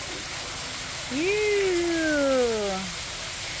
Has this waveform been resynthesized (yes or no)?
no